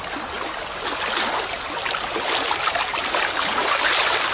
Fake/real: real